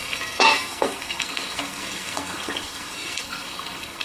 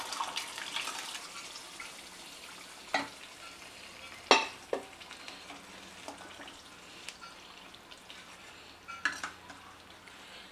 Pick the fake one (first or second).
first